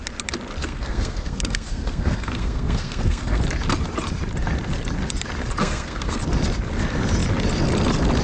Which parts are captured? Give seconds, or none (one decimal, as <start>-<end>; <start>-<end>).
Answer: 0.0-0.6; 3.4-5.6; 6.2-8.2